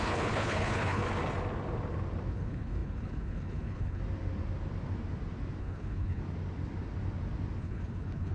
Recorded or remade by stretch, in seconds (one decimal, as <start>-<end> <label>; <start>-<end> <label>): 0.0-1.0 remade; 1.0-2.3 recorded; 2.3-4.0 remade; 4.0-5.6 recorded; 5.6-6.2 remade; 6.2-7.6 recorded; 7.6-8.3 remade